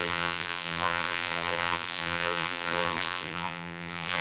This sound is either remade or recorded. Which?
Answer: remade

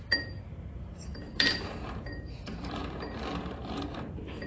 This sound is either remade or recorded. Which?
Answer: remade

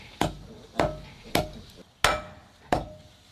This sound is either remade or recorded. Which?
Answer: recorded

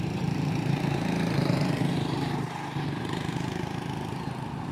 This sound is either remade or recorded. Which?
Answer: remade